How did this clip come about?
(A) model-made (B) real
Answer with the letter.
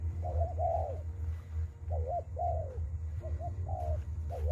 B